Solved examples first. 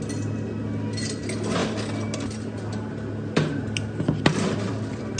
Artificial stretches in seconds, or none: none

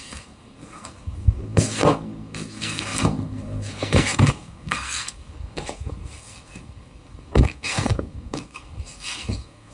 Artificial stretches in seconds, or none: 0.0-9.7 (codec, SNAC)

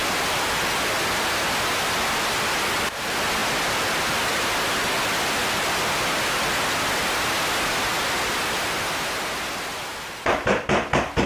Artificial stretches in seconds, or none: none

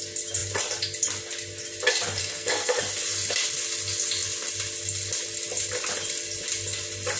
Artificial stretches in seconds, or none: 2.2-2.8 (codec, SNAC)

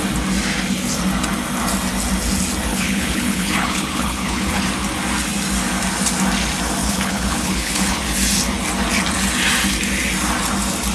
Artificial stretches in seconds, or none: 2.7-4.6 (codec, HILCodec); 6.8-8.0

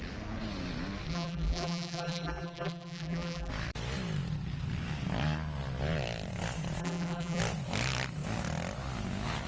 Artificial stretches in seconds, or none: 1.1-3.5 (vocoder, BigVGAN v2); 6.8-7.4